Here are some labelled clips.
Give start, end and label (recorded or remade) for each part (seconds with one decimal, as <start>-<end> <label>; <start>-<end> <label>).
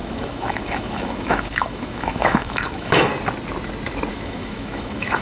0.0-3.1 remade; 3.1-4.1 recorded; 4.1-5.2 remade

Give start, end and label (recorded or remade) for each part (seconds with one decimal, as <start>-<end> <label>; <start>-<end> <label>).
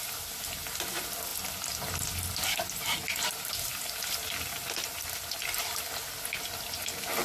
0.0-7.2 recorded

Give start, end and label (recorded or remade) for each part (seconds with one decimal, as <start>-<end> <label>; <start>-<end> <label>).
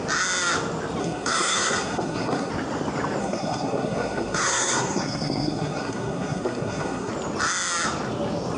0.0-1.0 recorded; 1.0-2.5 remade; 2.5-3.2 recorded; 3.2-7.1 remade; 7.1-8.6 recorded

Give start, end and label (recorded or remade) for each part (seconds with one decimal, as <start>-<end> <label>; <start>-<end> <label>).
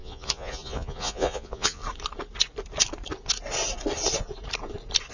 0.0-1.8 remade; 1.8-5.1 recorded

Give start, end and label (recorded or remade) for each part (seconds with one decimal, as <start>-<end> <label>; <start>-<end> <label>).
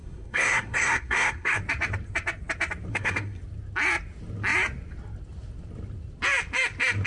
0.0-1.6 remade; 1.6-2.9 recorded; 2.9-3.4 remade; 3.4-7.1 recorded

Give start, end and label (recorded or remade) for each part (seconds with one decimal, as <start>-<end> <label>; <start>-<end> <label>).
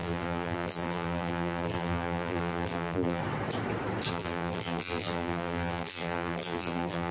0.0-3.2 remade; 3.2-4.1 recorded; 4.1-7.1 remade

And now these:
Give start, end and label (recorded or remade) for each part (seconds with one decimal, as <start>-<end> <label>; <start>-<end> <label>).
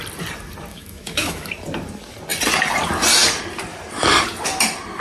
0.0-0.7 recorded; 0.7-1.5 remade; 1.5-5.0 recorded